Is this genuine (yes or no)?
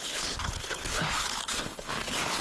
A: no